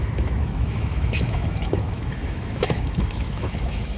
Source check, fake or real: fake